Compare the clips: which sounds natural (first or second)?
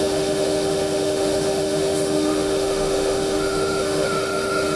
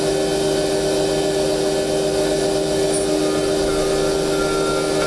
second